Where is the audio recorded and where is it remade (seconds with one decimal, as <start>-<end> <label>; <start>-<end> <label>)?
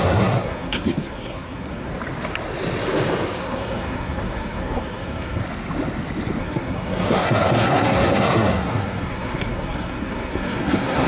0.0-1.9 remade; 1.9-3.4 recorded; 3.4-5.4 remade; 5.4-6.4 recorded; 6.4-11.1 remade